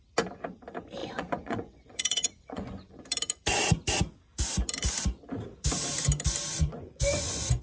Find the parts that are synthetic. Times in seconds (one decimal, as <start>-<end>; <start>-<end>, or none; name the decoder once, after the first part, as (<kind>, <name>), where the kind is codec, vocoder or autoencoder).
1.0-3.0 (vocoder, Vocos); 6.6-7.6